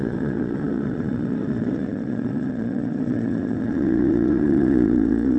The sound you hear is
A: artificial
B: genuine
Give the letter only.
A